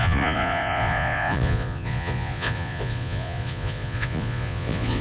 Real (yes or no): no